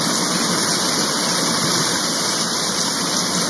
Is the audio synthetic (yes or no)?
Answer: no